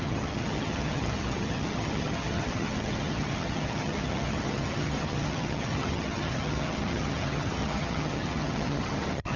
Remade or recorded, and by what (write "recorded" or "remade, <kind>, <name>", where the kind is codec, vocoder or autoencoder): remade, vocoder, HiFi-GAN